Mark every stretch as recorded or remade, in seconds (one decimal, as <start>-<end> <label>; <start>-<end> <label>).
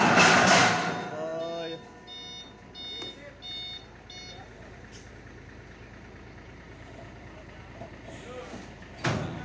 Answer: 0.0-9.4 recorded